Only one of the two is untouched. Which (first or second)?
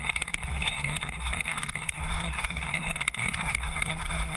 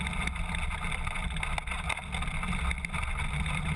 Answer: second